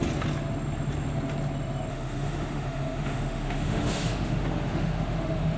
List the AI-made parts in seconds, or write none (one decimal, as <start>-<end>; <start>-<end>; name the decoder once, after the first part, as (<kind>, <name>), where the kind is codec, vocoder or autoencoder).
1.9-5.6 (autoencoder, DAC-VAE)

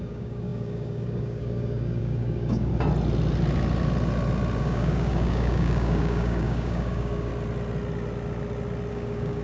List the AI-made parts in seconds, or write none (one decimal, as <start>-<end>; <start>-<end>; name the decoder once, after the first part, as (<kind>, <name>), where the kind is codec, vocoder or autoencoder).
0.0-2.7 (codec, DAC); 4.6-7.3; 8.9-9.4

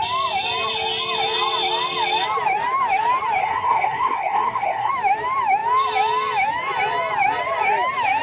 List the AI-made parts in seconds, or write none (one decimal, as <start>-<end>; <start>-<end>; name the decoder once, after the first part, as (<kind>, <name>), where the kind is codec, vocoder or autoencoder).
3.4-4.9 (codec, SNAC)

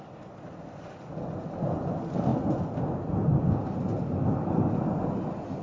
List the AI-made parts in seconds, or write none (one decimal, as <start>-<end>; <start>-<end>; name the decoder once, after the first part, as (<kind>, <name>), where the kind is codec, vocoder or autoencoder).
none